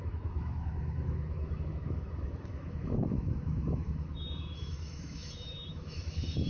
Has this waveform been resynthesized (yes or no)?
yes